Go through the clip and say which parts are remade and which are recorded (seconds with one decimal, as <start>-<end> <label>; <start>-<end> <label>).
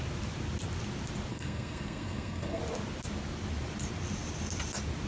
0.0-1.3 recorded; 1.3-2.6 remade; 2.6-5.1 recorded